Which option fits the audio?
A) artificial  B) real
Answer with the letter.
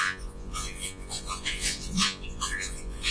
A